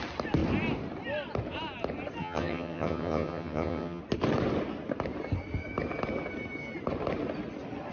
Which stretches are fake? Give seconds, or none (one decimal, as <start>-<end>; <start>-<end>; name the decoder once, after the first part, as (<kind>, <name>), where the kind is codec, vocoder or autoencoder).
2.2-4.0 (vocoder, HiFi-GAN)